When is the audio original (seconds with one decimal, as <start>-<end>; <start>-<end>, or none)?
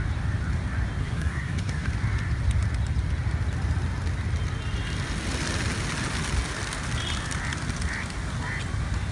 0.0-1.0; 1.9-9.1